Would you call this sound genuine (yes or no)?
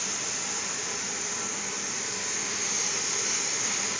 yes